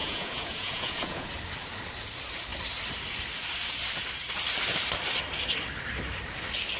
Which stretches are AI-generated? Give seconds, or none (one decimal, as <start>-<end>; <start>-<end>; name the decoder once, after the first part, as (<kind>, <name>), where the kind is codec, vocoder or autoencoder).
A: 0.0-1.3 (vocoder, Vocos)